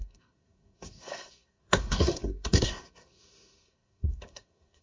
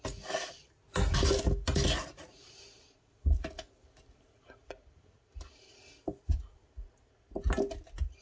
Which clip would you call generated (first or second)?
first